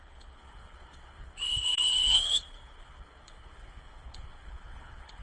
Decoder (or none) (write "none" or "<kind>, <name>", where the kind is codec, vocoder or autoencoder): codec, HILCodec